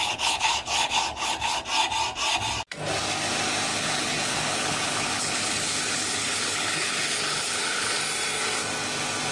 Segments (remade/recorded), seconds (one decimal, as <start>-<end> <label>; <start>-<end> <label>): 0.0-1.6 remade; 1.6-3.7 recorded; 3.7-8.0 remade; 8.0-9.3 recorded